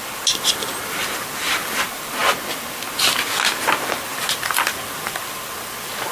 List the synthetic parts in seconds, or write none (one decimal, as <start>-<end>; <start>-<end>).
0.0-2.2; 3.6-6.1

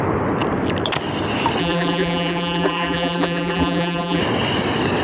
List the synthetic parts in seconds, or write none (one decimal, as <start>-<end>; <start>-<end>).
1.6-4.2

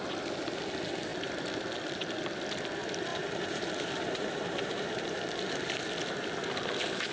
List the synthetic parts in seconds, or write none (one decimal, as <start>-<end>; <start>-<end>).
3.1-5.8

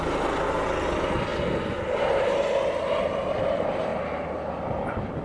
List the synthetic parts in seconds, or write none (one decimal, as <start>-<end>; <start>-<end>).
0.0-1.3; 3.4-3.9; 4.5-5.2

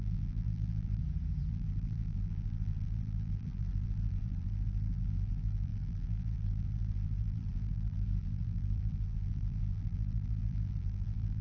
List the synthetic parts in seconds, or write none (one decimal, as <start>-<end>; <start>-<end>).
0.0-1.0; 1.5-11.4

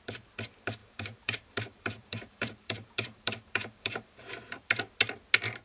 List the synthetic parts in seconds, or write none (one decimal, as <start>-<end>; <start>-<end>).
0.8-4.2